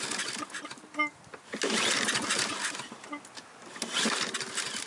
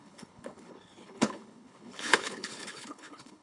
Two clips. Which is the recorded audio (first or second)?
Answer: first